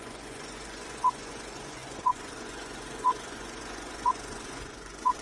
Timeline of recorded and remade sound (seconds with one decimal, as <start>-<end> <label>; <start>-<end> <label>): 0.0-5.2 remade

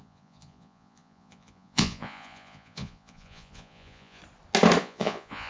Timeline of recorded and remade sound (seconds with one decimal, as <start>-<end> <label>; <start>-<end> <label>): 0.0-4.2 remade; 4.2-4.8 recorded; 4.8-5.5 remade

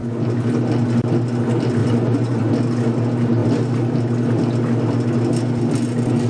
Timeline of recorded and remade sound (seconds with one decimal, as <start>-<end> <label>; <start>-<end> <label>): 0.0-1.8 recorded; 1.8-2.5 remade; 2.5-6.3 recorded

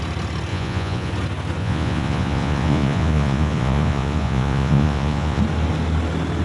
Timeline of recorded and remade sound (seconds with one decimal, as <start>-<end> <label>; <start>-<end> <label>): 0.0-0.5 recorded; 0.5-1.1 remade; 1.1-1.6 recorded; 1.6-5.4 remade; 5.4-6.4 recorded

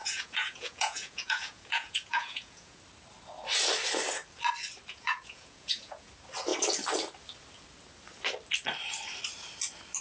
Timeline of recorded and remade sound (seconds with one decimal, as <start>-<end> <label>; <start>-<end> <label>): 0.0-2.8 remade; 2.8-4.9 recorded; 4.9-6.1 remade; 6.1-10.0 recorded

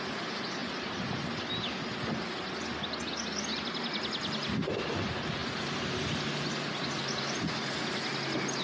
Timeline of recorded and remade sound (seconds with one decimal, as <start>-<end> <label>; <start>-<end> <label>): 0.0-8.6 recorded

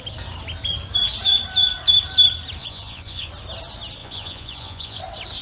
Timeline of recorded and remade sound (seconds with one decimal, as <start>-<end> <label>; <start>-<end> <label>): 0.0-2.6 recorded; 2.6-3.3 remade; 3.3-4.0 recorded; 4.0-5.0 remade; 5.0-5.4 recorded